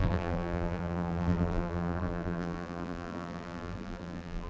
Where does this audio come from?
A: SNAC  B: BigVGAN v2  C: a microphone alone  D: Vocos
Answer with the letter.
B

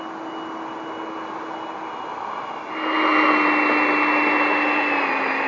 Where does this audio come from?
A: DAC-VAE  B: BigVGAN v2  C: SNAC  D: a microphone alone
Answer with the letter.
D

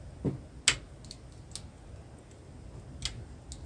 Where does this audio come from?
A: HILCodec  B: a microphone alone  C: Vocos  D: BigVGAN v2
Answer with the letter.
B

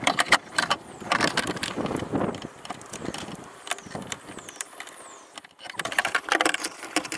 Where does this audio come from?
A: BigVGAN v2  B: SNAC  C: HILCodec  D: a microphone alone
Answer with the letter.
A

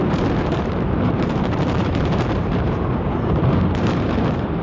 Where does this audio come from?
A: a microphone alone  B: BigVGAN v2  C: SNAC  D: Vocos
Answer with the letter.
B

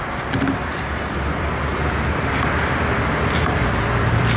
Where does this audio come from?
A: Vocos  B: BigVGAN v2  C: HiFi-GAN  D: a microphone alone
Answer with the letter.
B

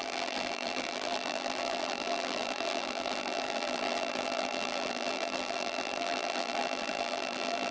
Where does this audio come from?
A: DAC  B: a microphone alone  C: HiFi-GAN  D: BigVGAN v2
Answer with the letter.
D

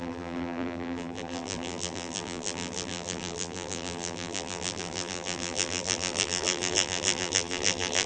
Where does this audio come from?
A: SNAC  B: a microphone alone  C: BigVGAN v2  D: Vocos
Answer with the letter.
C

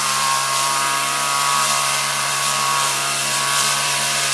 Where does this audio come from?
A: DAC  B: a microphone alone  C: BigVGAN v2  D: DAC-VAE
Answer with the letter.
C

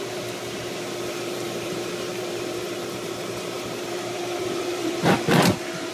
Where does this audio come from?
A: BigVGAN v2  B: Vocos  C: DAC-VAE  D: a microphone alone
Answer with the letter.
A